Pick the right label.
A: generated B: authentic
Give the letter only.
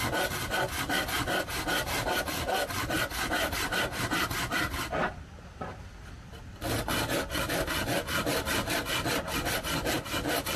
B